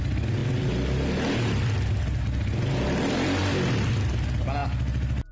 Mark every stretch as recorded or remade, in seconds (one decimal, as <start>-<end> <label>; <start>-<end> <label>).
0.0-3.4 recorded; 3.4-3.9 remade; 3.9-5.3 recorded